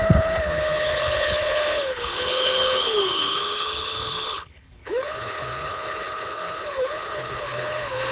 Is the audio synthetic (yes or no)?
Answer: yes